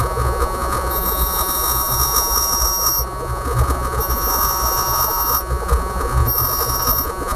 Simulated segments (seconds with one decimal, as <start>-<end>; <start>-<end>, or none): 0.0-7.4